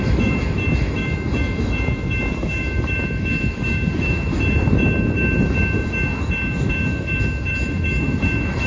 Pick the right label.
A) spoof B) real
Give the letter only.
A